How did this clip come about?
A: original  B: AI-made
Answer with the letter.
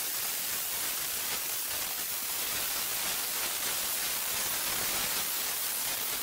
A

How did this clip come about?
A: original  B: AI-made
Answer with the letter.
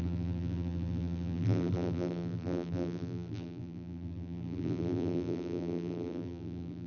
B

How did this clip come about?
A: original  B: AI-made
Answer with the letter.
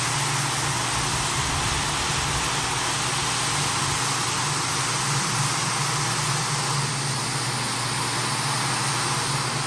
A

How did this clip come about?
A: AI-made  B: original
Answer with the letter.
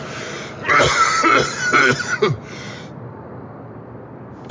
B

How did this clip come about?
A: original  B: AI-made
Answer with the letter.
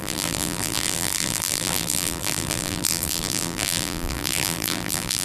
B